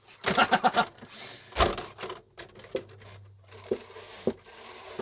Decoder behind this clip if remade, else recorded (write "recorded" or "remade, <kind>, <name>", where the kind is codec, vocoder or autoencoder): recorded